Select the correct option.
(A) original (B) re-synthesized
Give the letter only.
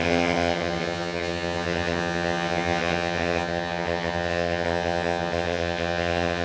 B